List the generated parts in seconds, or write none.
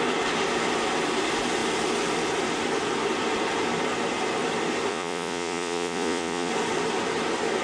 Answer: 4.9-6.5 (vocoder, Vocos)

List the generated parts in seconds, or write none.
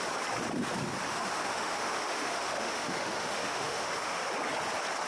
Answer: 1.1-4.2 (autoencoder, DAC-VAE)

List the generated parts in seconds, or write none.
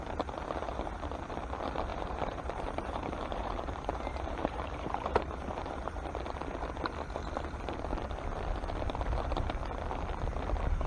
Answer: 1.9-6.1 (vocoder, BigVGAN v2)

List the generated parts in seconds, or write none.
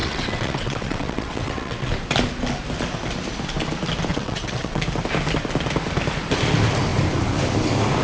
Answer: 0.0-1.9 (vocoder, WaveNeXt); 4.1-4.8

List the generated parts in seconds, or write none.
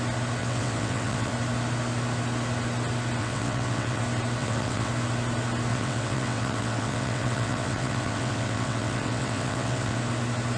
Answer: 0.4-1.3 (vocoder, WaveNeXt); 3.2-4.0; 4.4-4.9; 5.7-10.0